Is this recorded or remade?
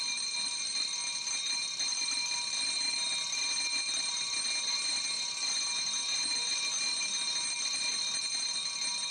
recorded